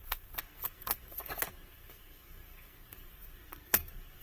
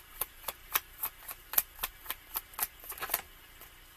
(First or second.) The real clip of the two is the second